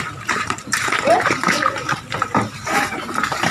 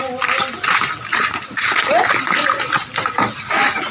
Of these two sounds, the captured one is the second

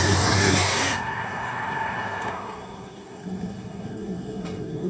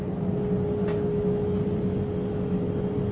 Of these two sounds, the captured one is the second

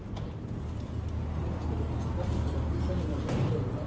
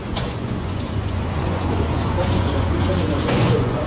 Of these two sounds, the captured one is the first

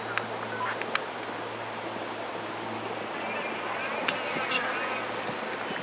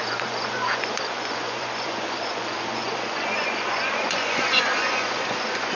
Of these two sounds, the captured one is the first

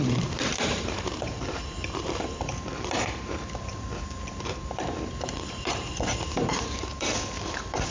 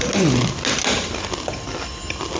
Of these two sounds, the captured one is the second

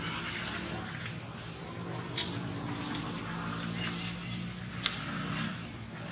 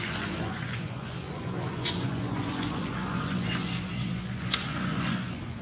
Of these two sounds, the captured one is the first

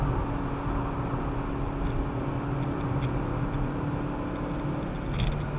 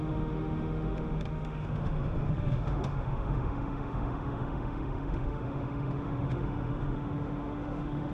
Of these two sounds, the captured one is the first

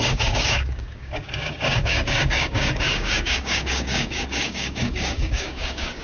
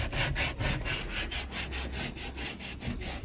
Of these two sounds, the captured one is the second